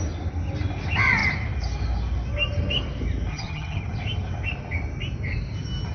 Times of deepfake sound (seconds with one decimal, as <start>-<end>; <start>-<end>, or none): 3.3-3.8